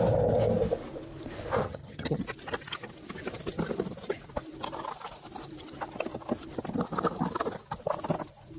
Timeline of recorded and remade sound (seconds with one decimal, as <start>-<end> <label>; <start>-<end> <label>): 0.0-1.6 recorded; 1.6-2.2 remade; 2.2-8.6 recorded